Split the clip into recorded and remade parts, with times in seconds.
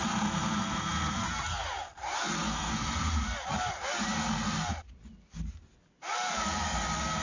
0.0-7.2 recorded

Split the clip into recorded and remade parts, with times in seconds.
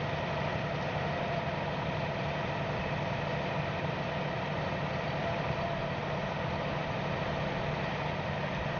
0.0-8.8 recorded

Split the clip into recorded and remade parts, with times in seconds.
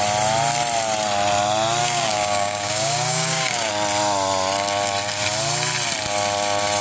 0.0-1.8 recorded; 1.8-3.7 remade; 3.7-6.8 recorded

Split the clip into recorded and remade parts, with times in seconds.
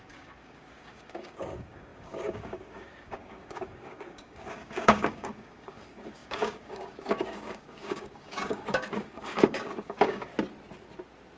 0.0-10.3 remade; 10.3-11.4 recorded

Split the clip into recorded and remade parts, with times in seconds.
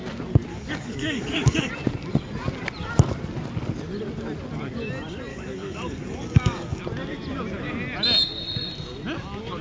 0.0-0.5 recorded; 0.5-1.7 remade; 1.7-5.3 recorded; 5.3-6.8 remade; 6.8-9.6 recorded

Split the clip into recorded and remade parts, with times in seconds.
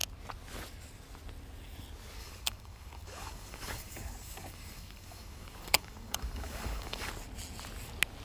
0.0-2.2 recorded; 2.2-7.1 remade; 7.1-8.2 recorded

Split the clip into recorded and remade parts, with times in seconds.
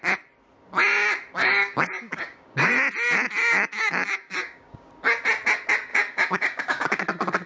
0.0-1.4 recorded; 1.4-2.7 remade; 2.7-3.4 recorded; 3.4-4.9 remade; 4.9-5.9 recorded; 5.9-7.0 remade; 7.0-7.5 recorded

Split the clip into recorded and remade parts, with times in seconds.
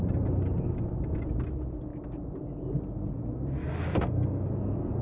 0.0-3.6 recorded; 3.6-4.5 remade; 4.5-5.0 recorded